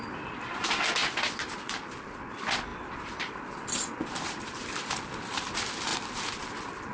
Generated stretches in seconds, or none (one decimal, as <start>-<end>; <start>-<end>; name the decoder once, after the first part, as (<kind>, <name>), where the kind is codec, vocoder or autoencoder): 2.7-4.9 (vocoder, BigVGAN v2)

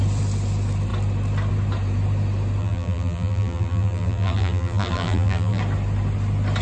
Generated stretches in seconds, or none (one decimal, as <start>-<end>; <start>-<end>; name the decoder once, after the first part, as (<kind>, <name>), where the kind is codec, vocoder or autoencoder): 2.6-5.6 (vocoder, BigVGAN v2)

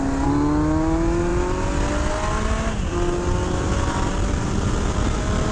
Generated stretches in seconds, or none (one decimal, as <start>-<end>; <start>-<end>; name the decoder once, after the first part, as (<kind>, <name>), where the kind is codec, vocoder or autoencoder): none